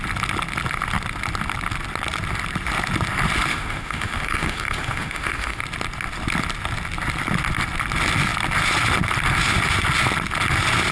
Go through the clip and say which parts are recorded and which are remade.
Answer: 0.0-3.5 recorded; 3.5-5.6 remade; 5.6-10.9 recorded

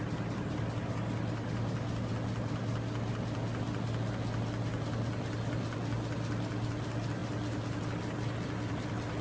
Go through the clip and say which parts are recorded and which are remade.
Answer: 0.0-9.2 recorded

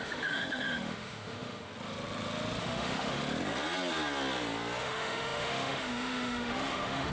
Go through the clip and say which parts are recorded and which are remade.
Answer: 0.0-1.7 remade; 1.7-2.6 recorded; 2.6-3.2 remade; 3.2-4.8 recorded; 4.8-7.1 remade

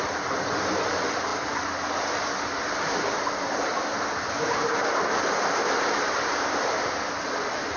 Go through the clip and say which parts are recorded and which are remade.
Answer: 0.0-7.8 recorded

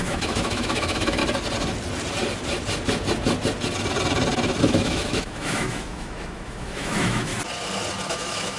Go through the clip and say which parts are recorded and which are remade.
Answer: 0.0-1.2 remade; 1.2-4.6 recorded; 4.6-7.3 remade; 7.3-8.1 recorded; 8.1-8.6 remade

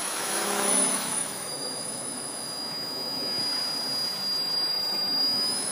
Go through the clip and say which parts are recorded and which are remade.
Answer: 0.0-3.4 remade; 3.4-4.7 recorded; 4.7-5.7 remade

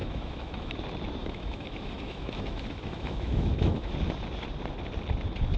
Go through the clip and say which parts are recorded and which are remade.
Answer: 0.0-0.7 remade; 0.7-1.2 recorded; 1.2-3.9 remade; 3.9-5.6 recorded

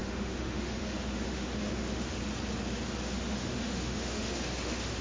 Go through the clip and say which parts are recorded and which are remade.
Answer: 0.0-2.2 remade; 2.2-3.0 recorded; 3.0-5.0 remade